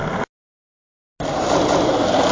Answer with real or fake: real